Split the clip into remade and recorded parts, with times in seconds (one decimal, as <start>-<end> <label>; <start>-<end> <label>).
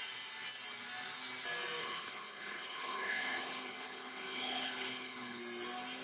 0.0-1.8 recorded; 1.8-5.4 remade; 5.4-6.0 recorded